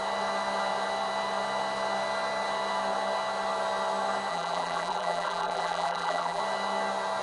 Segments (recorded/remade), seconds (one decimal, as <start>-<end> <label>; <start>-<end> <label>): 0.0-4.3 recorded; 4.3-6.4 remade; 6.4-7.2 recorded

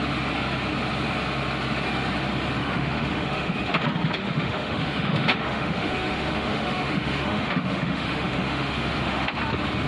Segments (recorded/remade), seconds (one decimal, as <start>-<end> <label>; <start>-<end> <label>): 0.0-2.6 recorded; 2.6-3.8 remade; 3.8-4.2 recorded; 4.2-9.4 remade; 9.4-9.9 recorded